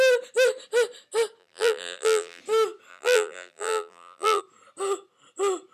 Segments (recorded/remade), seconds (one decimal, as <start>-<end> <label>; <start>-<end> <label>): 0.0-1.4 recorded; 1.4-2.4 remade; 2.4-2.9 recorded; 2.9-4.4 remade; 4.4-5.7 recorded